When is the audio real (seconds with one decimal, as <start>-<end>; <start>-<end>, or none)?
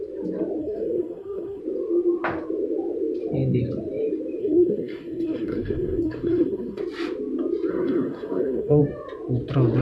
0.0-0.6; 1.6-4.4; 6.8-7.7; 8.8-9.8